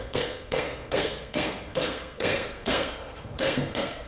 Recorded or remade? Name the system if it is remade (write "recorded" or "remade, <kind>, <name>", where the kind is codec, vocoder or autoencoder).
remade, codec, SNAC